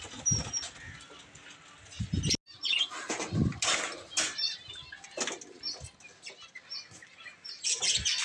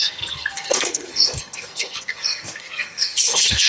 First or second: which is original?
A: first